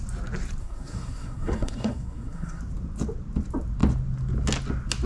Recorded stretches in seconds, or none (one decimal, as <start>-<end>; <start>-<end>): 0.0-0.6; 2.6-5.1